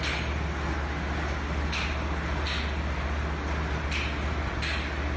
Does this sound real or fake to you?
real